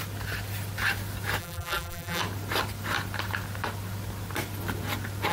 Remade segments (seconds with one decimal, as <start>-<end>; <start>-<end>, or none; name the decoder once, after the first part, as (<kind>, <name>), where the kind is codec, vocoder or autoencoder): 1.4-2.2 (vocoder, BigVGAN v2)